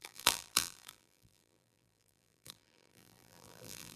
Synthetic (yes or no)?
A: yes